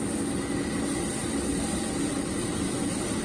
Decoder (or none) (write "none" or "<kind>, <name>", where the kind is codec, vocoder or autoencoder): none